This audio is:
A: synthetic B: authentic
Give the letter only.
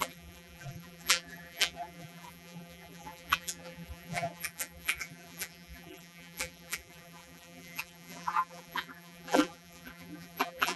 A